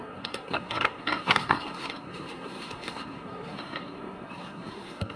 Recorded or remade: remade